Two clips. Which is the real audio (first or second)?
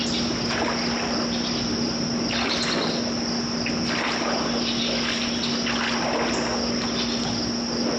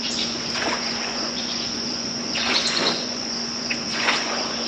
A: first